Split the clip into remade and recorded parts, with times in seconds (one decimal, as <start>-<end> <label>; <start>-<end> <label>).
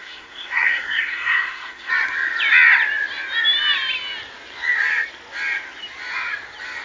0.0-1.9 remade; 1.9-6.8 recorded